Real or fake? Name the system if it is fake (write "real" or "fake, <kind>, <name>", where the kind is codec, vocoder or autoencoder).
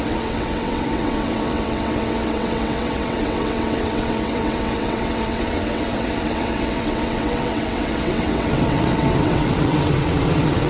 fake, vocoder, WaveNeXt